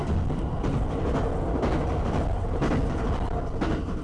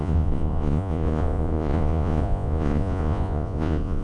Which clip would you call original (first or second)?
first